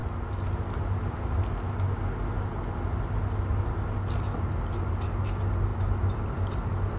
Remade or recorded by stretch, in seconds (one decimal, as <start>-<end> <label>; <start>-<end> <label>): 0.0-7.0 recorded